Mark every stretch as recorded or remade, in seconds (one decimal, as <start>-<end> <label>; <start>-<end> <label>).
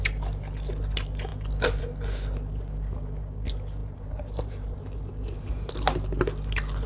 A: 0.0-3.8 recorded; 3.8-4.8 remade; 4.8-6.9 recorded